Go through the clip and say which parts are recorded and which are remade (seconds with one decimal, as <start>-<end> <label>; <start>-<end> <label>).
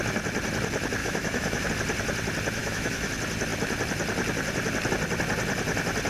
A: 0.0-1.0 recorded; 1.0-1.7 remade; 1.7-2.6 recorded; 2.6-3.1 remade; 3.1-6.1 recorded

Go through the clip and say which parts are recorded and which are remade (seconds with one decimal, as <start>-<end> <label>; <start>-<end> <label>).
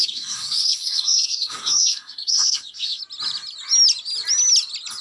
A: 0.0-3.0 remade; 3.0-5.0 recorded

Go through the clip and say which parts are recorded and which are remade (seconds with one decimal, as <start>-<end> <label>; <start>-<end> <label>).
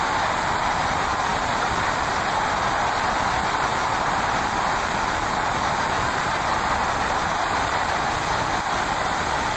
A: 0.0-3.7 recorded; 3.7-6.2 remade; 6.2-9.6 recorded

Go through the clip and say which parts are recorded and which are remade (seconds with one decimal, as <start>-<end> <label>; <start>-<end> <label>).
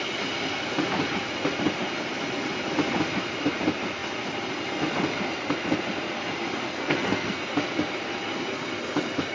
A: 0.0-6.7 recorded; 6.7-7.4 remade; 7.4-9.3 recorded